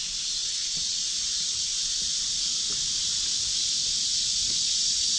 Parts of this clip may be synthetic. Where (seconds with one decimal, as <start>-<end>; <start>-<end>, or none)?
0.4-1.0